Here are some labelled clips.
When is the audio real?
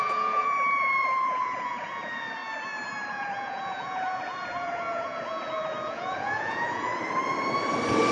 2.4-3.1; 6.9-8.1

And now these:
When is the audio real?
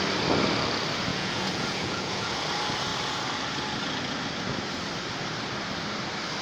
0.0-1.1; 2.4-6.4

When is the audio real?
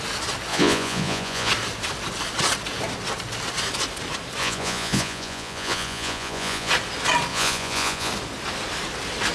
0.0-0.5; 1.5-4.4; 6.7-7.3; 8.1-9.3